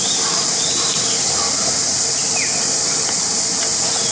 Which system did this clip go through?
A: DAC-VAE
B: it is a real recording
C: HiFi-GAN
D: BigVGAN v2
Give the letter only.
B